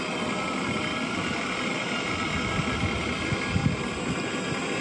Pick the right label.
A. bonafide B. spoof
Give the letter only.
A